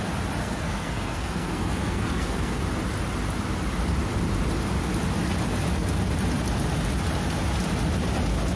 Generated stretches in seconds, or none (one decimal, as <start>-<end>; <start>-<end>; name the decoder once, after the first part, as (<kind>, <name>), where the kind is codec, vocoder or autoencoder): 0.4-2.6 (codec, SNAC)